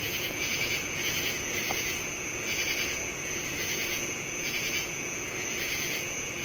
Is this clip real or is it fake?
fake